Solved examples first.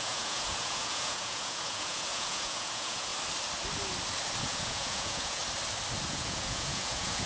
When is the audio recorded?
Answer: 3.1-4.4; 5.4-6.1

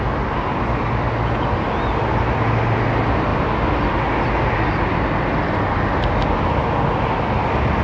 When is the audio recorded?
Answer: 0.0-7.8

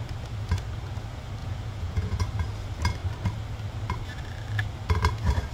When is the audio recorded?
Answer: 0.0-1.4; 2.2-5.5

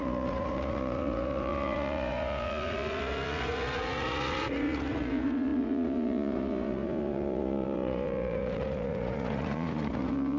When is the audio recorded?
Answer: none

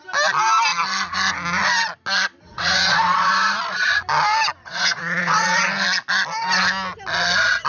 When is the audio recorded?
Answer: 0.0-2.5; 3.3-4.6; 5.6-7.7